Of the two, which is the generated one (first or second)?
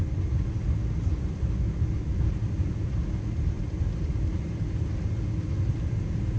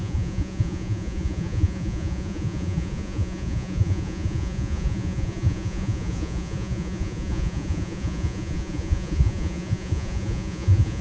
second